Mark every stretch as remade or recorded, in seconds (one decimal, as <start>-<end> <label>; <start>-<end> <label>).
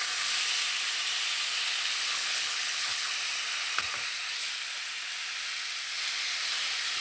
0.0-2.1 recorded; 2.1-3.1 remade; 3.1-7.0 recorded